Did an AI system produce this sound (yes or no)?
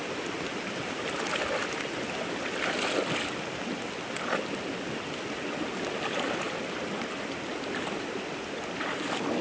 no